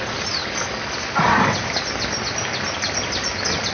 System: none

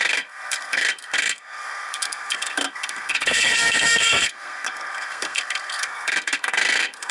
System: codec, SNAC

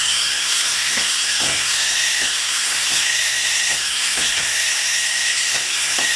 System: codec, SNAC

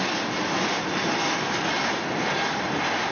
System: none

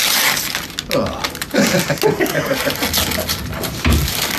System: none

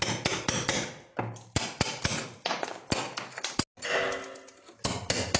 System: none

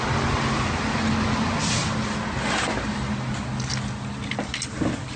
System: none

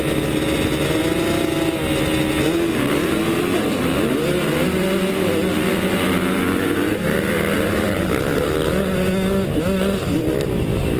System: none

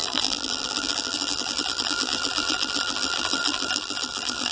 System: vocoder, BigVGAN v2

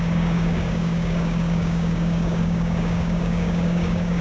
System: codec, DAC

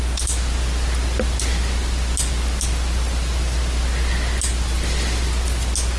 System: none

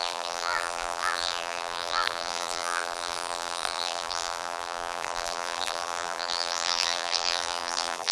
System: vocoder, BigVGAN v2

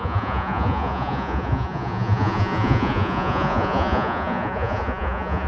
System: vocoder, Vocos